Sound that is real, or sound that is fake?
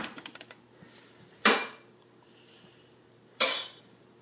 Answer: fake